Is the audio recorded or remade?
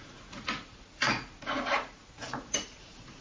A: remade